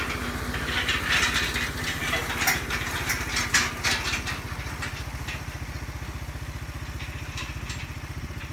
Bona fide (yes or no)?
yes